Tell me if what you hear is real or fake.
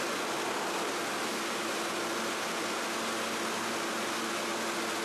real